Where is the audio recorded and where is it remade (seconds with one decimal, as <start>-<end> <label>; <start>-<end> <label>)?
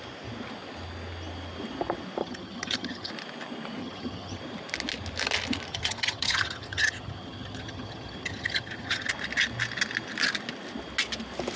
0.0-2.2 recorded; 2.2-3.1 remade; 3.1-3.8 recorded; 3.8-4.4 remade; 4.4-5.7 recorded; 5.7-9.1 remade; 9.1-11.6 recorded